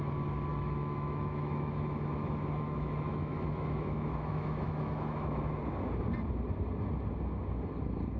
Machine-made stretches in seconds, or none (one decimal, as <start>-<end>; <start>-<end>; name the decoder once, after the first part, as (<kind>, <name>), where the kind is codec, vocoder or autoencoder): 0.5-5.4 (autoencoder, DAC-VAE)